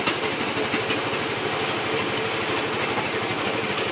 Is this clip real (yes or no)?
yes